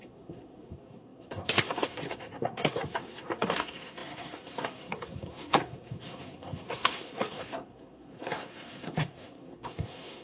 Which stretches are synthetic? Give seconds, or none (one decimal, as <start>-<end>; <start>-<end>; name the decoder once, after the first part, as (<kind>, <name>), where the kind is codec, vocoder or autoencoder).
0.0-10.2 (codec, SNAC)